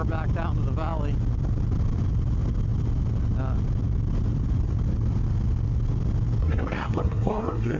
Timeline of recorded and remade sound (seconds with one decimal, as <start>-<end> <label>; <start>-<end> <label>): 0.0-6.4 recorded; 6.4-7.8 remade